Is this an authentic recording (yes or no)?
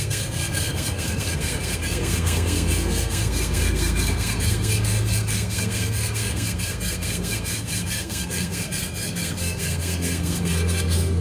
no